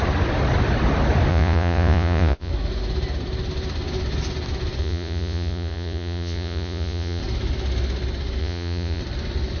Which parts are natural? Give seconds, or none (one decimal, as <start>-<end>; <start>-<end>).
0.0-1.3; 2.5-4.8; 7.2-8.4; 9.0-9.6